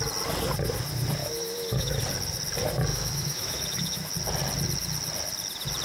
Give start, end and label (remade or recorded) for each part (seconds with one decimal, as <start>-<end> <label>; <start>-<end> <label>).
0.0-1.2 recorded; 1.2-2.0 remade; 2.0-2.9 recorded; 2.9-4.1 remade; 4.1-5.8 recorded